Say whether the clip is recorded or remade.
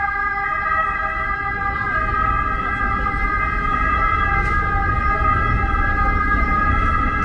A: recorded